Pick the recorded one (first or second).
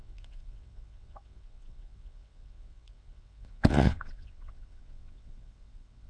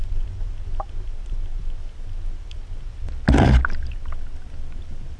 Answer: second